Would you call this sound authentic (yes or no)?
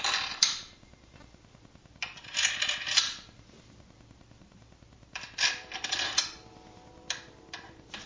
no